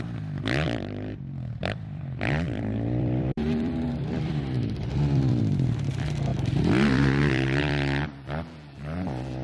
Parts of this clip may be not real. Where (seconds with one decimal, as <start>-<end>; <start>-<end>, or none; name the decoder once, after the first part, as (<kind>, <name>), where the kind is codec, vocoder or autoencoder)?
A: 1.6-5.4 (vocoder, BigVGAN v2); 6.3-7.6